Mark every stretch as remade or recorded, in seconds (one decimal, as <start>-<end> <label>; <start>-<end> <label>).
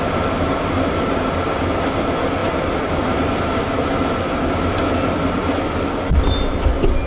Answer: 0.0-7.1 recorded